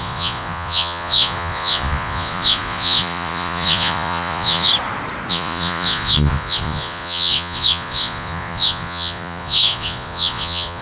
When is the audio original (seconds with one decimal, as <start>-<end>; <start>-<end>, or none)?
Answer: 4.7-5.3